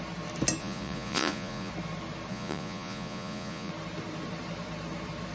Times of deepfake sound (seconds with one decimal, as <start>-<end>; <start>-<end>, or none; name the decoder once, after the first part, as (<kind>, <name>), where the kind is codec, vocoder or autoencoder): 0.6-1.7 (vocoder, Vocos); 2.3-3.7